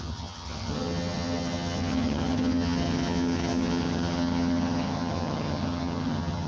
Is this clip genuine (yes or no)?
no